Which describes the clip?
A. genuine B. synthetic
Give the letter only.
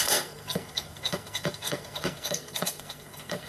B